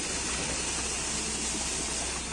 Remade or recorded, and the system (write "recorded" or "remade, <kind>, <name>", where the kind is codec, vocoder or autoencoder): recorded